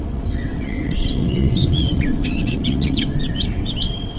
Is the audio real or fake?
fake